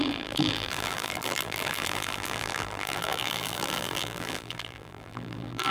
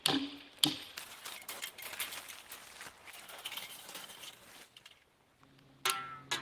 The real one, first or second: second